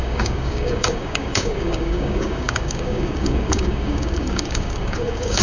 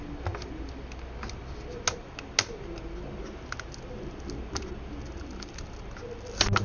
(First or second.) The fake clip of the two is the first